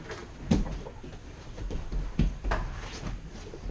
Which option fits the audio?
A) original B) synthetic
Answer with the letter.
A